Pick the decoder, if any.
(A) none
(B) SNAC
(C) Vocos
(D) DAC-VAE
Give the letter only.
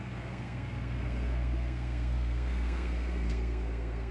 B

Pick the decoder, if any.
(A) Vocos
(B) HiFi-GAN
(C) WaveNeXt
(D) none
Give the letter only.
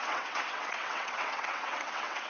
C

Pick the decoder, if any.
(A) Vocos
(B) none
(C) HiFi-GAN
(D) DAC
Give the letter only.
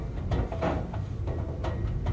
B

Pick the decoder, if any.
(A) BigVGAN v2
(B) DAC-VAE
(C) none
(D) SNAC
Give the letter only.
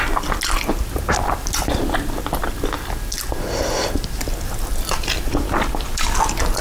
C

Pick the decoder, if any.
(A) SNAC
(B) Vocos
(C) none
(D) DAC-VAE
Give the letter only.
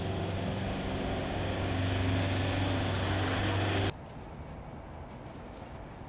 C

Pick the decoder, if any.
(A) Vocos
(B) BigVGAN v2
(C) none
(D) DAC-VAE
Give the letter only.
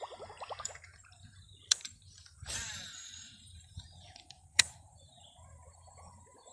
B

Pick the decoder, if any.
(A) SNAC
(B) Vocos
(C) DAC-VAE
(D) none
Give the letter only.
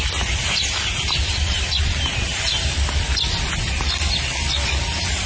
D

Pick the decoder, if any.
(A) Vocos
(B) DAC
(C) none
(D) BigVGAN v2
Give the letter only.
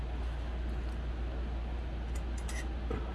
C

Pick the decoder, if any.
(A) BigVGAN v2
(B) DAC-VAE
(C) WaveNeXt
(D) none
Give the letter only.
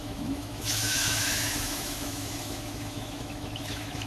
B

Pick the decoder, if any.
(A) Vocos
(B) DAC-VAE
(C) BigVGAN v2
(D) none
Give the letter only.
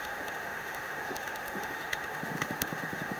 B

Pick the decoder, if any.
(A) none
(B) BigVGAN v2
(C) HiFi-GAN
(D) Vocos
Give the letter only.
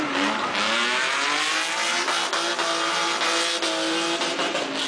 A